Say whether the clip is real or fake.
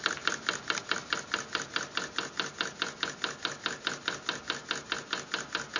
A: real